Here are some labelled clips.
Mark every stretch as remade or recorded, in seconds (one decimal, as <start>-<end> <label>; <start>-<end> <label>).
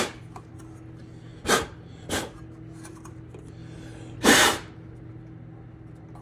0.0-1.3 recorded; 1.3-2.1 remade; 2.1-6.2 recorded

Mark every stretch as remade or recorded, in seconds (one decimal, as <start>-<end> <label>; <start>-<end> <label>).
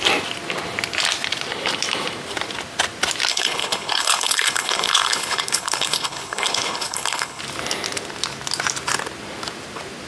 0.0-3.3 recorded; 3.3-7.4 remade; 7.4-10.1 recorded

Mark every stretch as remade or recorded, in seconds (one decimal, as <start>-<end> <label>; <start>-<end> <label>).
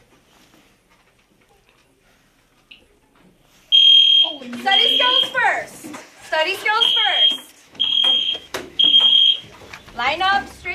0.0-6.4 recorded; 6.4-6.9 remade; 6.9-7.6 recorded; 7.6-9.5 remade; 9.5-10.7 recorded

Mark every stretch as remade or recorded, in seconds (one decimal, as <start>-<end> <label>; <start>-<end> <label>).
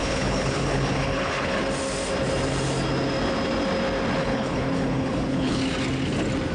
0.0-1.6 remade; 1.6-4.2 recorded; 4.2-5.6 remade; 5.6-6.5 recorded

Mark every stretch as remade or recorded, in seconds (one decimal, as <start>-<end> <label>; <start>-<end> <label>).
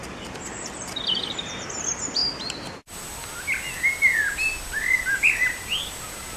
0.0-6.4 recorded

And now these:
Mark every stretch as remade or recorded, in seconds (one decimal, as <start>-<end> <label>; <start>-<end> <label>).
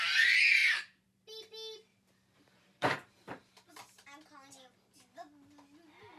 0.0-0.6 recorded; 0.6-1.2 remade; 1.2-1.9 recorded; 1.9-3.7 remade; 3.7-6.2 recorded